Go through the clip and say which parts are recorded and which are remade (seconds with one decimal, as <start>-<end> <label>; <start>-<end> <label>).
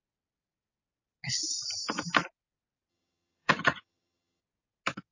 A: 0.0-2.9 recorded; 2.9-4.4 remade; 4.4-5.1 recorded